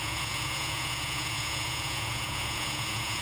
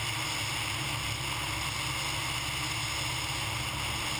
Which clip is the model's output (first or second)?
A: first